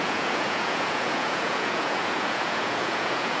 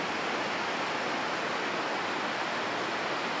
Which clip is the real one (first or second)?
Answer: second